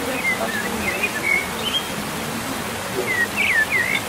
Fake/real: real